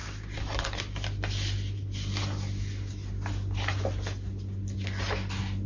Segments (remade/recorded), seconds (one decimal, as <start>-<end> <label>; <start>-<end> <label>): 0.0-5.7 recorded